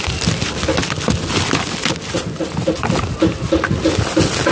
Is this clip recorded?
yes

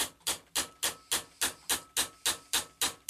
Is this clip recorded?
yes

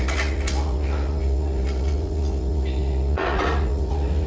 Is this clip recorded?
no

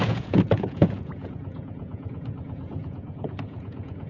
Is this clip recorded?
no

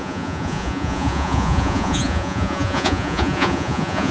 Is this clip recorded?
no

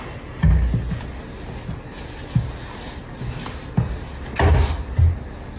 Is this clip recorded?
yes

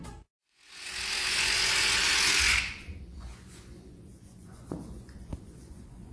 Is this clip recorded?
no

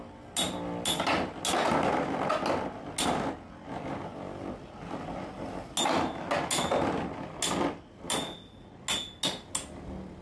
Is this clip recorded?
yes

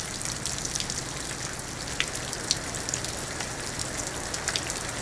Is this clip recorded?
yes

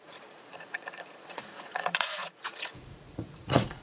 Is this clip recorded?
no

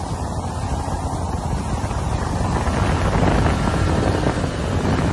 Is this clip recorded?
yes